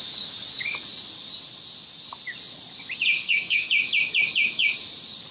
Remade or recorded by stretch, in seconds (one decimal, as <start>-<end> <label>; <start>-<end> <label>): 0.0-3.2 recorded; 3.2-3.7 remade; 3.7-5.3 recorded